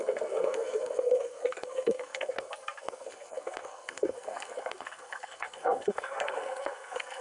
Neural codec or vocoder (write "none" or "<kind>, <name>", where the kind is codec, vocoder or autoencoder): codec, SNAC